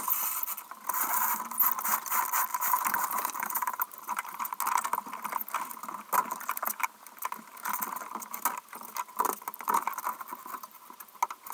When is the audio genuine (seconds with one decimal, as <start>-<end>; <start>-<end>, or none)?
0.0-2.5; 4.5-11.5